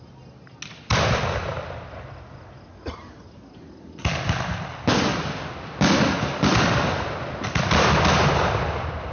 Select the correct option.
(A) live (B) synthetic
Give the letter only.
A